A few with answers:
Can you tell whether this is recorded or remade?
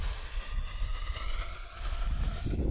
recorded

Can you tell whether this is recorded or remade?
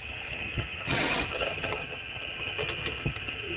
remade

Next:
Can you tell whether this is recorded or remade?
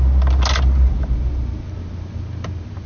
recorded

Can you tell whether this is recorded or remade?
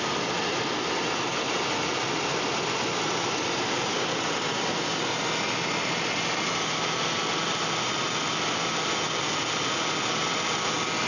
recorded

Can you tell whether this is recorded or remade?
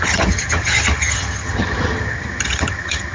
remade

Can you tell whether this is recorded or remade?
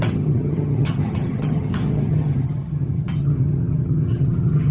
remade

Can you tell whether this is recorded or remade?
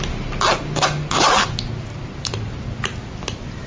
recorded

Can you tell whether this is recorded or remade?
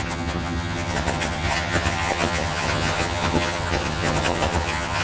remade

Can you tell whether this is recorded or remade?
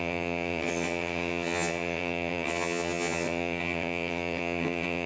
remade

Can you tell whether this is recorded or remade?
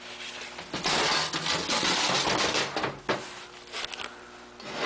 recorded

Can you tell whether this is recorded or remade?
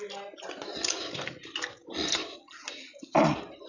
recorded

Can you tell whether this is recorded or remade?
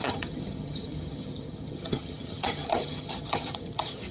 remade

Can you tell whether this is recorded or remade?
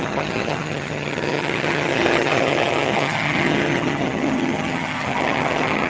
remade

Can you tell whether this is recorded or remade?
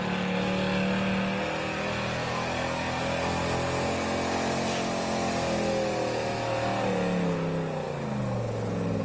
recorded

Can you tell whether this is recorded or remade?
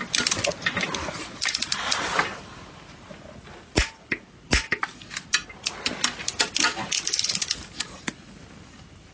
recorded